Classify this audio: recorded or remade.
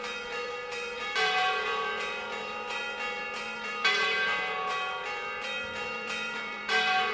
remade